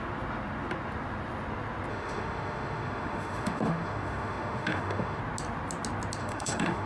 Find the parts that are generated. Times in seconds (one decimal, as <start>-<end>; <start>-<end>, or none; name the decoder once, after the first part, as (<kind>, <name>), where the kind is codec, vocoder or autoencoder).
1.9-5.2 (autoencoder, DAC-VAE); 6.2-6.9